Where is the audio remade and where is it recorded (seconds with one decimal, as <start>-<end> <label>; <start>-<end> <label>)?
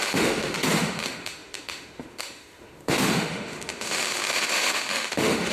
0.0-5.5 remade